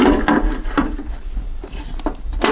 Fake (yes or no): no